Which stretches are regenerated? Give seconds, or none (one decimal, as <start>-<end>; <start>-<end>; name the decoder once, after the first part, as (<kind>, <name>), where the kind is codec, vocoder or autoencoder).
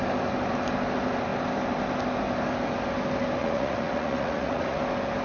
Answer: 3.4-4.8 (vocoder, Vocos)